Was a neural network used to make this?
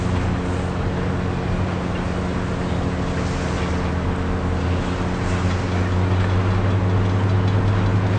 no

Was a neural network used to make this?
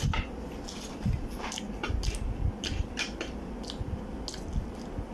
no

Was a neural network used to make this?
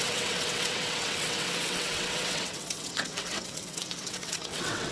yes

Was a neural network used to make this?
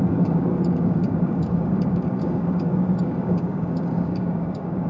yes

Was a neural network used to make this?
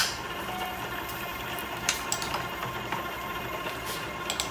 no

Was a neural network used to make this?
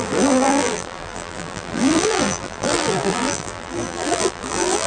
yes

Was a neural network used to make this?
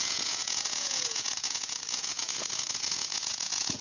yes